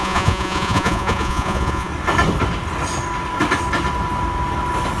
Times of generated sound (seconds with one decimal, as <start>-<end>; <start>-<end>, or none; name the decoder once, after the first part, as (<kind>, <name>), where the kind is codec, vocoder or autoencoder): 0.0-1.9 (vocoder, Vocos)